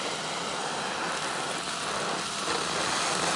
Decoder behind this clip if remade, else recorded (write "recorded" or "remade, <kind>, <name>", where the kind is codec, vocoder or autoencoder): recorded